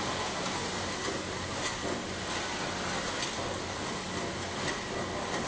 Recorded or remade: recorded